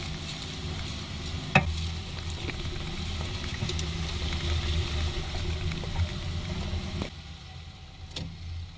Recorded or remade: recorded